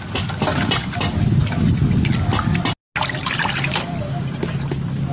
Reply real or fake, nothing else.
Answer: real